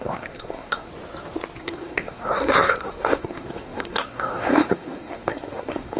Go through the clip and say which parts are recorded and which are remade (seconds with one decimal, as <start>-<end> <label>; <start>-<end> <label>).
0.0-0.9 remade; 0.9-1.6 recorded; 1.6-6.0 remade